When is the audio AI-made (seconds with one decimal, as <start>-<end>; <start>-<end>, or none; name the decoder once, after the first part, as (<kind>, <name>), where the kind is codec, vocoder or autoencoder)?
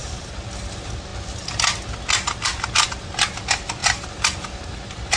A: 3.8-4.6 (vocoder, BigVGAN v2)